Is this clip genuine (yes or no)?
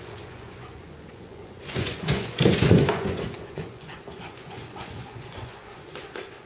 no